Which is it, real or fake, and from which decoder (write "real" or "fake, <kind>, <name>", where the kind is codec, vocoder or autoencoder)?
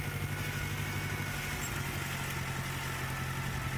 real